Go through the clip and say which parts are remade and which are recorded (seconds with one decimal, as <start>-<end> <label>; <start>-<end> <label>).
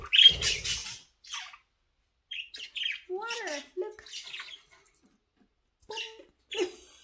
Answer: 0.0-7.0 recorded